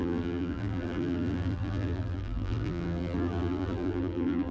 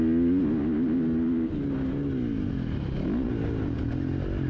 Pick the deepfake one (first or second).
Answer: first